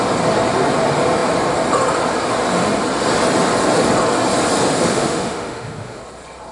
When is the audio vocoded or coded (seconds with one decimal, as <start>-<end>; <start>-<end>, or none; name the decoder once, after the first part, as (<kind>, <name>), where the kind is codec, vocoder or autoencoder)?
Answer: 4.9-6.0 (autoencoder, DAC-VAE)